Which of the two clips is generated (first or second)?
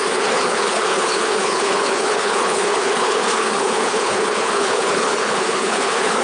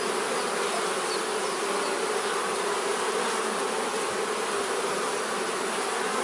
first